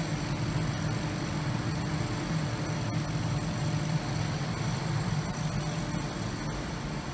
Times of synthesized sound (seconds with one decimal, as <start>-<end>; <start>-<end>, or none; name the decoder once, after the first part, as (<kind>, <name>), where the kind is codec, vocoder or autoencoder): none